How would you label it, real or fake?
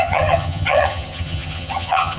fake